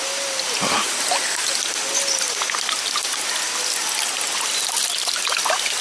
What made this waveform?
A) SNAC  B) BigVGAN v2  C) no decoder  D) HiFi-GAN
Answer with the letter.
C